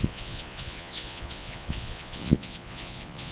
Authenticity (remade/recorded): remade